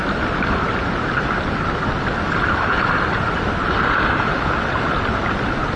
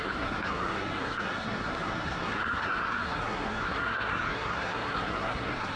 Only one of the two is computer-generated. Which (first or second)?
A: second